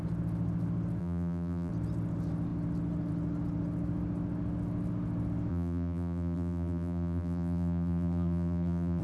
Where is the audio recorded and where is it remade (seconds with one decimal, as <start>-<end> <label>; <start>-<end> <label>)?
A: 0.0-1.0 recorded; 1.0-1.7 remade; 1.7-5.5 recorded; 5.5-9.0 remade